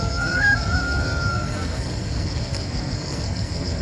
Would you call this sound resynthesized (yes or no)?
yes